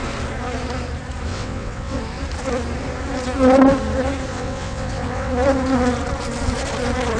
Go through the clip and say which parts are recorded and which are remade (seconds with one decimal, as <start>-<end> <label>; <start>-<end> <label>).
0.0-1.3 recorded; 1.3-2.0 remade; 2.0-4.3 recorded; 4.3-5.3 remade; 5.3-7.2 recorded